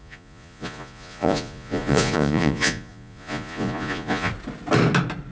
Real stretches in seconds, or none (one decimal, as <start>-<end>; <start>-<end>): 4.3-5.3